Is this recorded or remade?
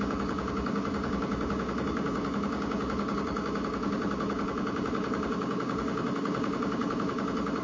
remade